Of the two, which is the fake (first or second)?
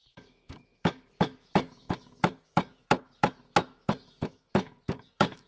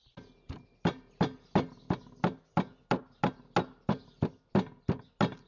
first